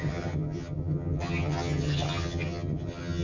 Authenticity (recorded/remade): remade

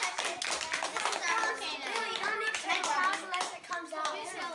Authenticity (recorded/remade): recorded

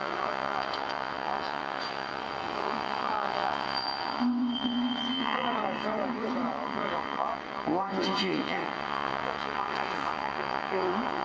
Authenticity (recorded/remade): remade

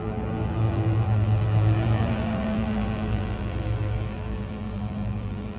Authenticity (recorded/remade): remade